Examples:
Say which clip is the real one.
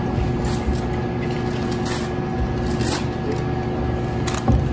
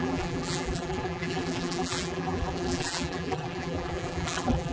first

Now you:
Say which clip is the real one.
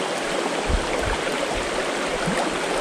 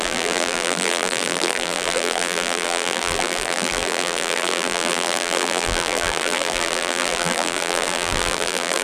first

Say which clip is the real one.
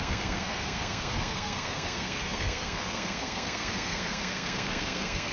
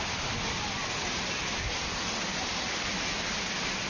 second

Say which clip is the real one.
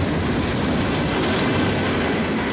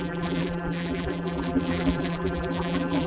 first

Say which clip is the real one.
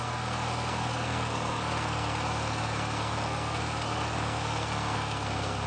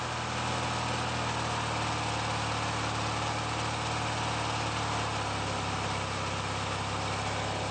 second